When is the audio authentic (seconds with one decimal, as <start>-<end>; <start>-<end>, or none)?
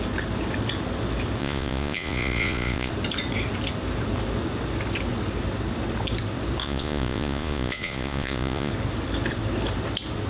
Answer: 0.0-1.4; 2.9-6.6; 8.7-10.3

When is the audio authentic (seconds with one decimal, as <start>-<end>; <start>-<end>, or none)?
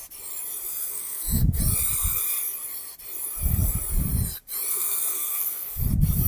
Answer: 0.0-0.7; 1.6-4.7; 5.8-6.3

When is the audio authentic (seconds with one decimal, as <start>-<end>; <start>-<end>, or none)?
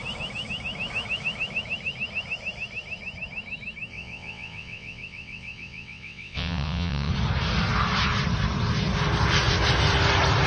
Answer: 0.0-3.9; 7.1-10.5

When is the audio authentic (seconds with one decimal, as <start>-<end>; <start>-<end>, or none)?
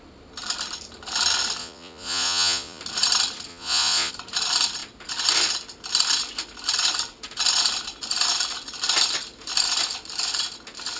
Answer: 0.0-1.6; 2.8-3.5; 4.1-11.0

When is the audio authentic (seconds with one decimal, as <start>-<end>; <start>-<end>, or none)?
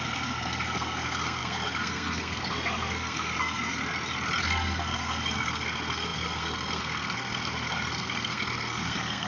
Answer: 3.8-4.4